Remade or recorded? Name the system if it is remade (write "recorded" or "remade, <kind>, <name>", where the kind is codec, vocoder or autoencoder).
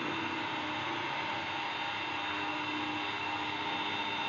recorded